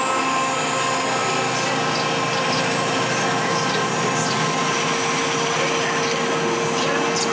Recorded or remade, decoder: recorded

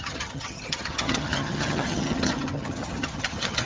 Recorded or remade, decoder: remade, vocoder, HiFi-GAN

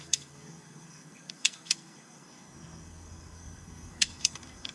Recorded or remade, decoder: remade, codec, SNAC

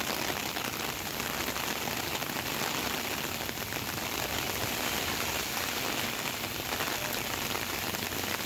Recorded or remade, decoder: recorded